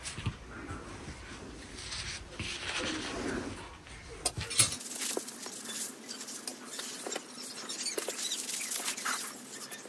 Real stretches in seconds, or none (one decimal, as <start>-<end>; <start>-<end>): 0.0-9.9